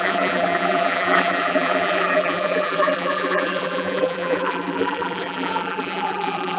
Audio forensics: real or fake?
fake